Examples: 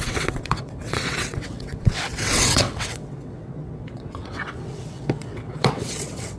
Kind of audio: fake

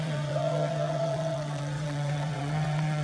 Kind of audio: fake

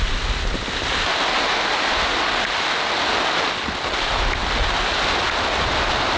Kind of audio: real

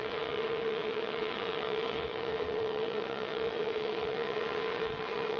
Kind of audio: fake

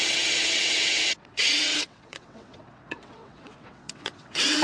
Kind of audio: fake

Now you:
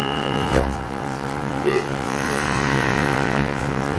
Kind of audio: fake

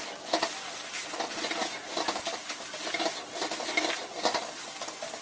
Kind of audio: real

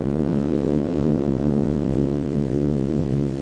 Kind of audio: fake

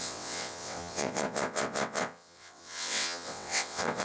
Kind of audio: fake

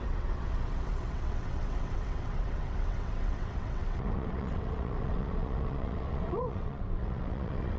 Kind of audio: fake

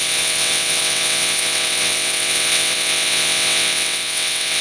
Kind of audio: fake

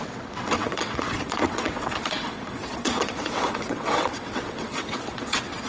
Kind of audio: fake